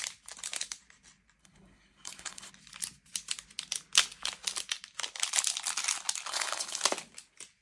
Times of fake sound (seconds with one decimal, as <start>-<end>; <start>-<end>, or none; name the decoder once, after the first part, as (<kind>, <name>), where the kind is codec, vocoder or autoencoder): 1.4-2.5 (codec, HILCodec); 6.3-6.8